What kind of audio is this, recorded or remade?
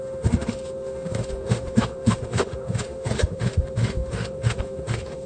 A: remade